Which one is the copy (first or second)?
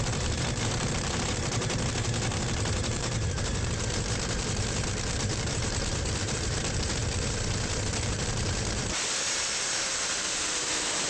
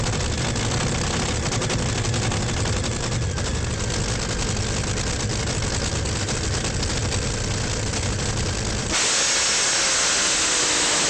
first